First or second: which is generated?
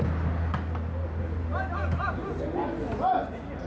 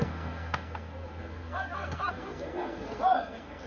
second